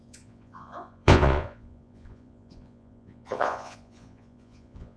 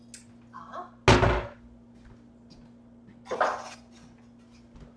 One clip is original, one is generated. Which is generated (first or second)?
first